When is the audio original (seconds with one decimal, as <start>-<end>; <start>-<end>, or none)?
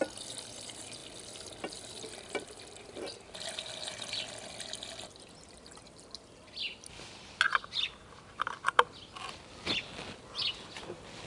0.0-11.3